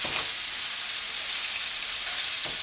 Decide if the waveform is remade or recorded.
recorded